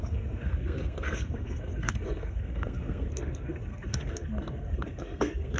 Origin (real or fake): fake